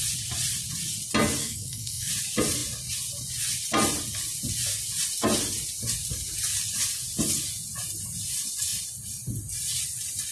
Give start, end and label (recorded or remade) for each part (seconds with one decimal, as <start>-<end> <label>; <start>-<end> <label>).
0.0-1.4 recorded; 1.4-2.1 remade; 2.1-10.3 recorded